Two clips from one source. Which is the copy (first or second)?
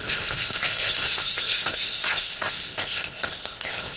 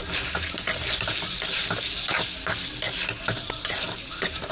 first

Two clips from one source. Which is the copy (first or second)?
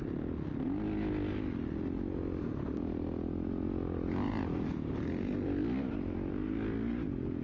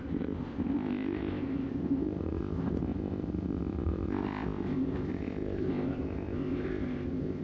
second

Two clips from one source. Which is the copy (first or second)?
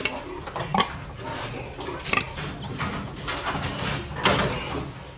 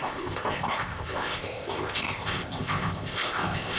second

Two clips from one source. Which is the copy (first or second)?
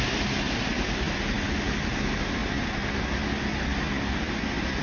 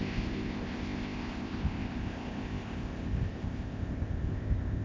second